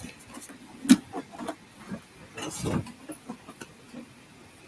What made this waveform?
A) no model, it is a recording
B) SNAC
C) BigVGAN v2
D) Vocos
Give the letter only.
A